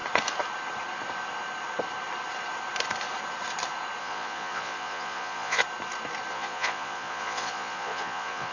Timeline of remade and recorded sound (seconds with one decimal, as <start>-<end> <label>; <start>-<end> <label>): 0.0-4.0 recorded; 4.0-5.6 remade; 5.6-6.3 recorded; 6.3-8.5 remade